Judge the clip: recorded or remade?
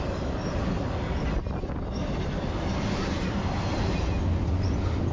recorded